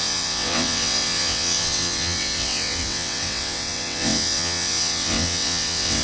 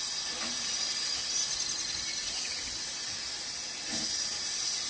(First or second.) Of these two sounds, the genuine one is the second